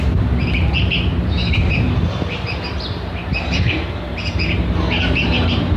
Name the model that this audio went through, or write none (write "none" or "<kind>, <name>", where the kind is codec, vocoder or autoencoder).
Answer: vocoder, BigVGAN v2